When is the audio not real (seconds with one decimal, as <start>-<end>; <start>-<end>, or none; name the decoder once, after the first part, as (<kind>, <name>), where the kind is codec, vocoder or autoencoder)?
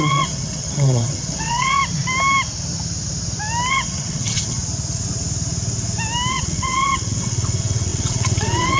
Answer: 0.0-1.8 (vocoder, WaveNeXt); 3.7-4.6; 6.3-8.8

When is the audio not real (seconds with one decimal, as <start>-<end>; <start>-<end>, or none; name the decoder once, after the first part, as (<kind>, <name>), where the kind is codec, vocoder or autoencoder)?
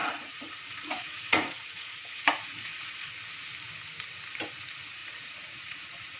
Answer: 0.0-3.1 (vocoder, Vocos); 5.0-6.2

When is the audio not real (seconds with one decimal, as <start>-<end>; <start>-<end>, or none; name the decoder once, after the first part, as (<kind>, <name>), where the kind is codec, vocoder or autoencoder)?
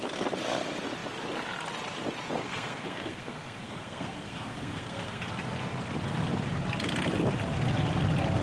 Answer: 2.4-5.3 (codec, SNAC)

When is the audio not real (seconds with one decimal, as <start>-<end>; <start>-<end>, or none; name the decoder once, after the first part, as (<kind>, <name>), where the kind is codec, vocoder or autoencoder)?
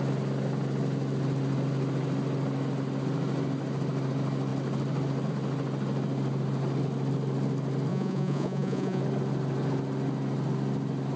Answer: 7.9-9.0 (vocoder, Vocos)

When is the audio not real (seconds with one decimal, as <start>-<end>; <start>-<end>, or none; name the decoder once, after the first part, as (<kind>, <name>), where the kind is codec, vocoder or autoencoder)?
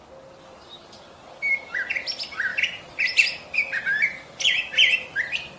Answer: none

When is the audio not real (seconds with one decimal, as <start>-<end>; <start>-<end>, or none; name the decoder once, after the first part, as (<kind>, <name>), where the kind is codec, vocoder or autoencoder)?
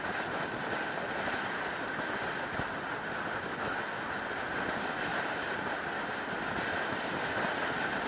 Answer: 5.1-5.9 (vocoder, BigVGAN v2)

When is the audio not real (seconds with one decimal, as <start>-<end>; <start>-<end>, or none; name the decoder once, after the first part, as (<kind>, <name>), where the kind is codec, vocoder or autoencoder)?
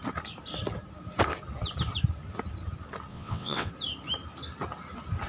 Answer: 3.1-3.7 (vocoder, WaveNeXt)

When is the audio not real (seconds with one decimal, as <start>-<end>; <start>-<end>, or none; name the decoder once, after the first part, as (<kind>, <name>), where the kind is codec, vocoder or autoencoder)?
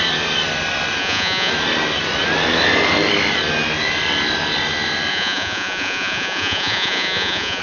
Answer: 1.0-1.5 (vocoder, Vocos); 5.1-7.6